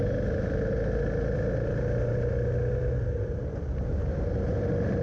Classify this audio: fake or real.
real